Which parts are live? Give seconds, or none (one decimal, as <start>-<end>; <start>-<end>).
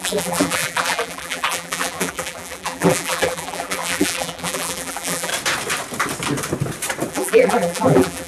5.3-7.1